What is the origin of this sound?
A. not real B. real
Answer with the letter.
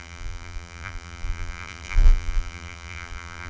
A